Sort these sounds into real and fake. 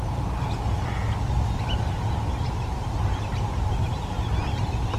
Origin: real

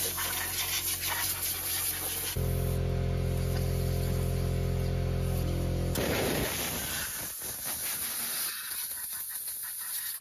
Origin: real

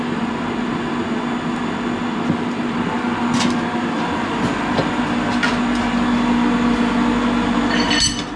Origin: real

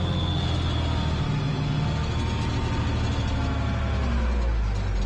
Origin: real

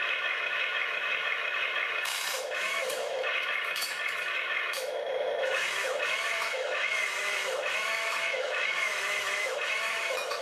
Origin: fake